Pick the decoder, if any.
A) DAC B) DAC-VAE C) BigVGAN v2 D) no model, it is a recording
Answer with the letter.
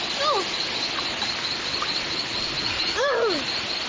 D